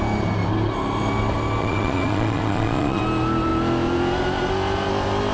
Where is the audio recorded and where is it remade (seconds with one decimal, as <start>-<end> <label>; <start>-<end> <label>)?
0.0-1.6 recorded; 1.6-3.0 remade; 3.0-5.3 recorded